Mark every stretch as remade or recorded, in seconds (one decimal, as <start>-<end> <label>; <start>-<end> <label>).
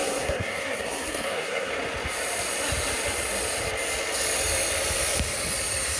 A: 0.0-1.7 remade; 1.7-6.0 recorded